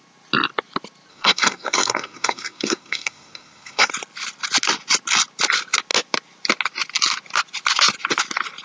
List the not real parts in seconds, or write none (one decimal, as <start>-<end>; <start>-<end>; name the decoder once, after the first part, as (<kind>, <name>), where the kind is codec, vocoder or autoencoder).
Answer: 1.1-3.9 (codec, SNAC)